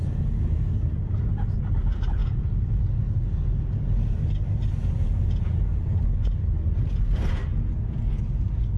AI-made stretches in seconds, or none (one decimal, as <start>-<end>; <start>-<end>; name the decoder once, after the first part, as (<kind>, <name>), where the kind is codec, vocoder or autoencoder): 2.2-2.8 (vocoder, Vocos); 4.8-5.8; 7.5-8.2